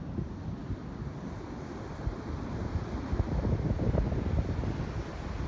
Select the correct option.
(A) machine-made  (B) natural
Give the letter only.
B